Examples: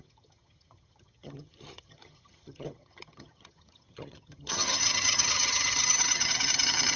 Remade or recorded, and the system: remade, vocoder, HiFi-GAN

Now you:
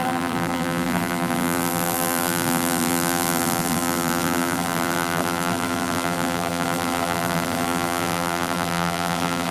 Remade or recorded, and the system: remade, vocoder, BigVGAN v2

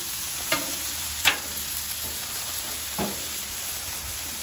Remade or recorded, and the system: remade, vocoder, BigVGAN v2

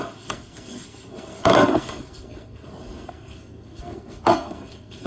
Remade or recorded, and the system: remade, codec, SNAC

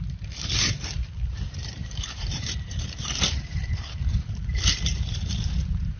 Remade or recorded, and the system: remade, vocoder, BigVGAN v2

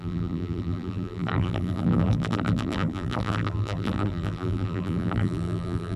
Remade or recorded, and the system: remade, vocoder, BigVGAN v2